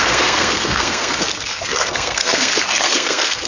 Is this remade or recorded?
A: remade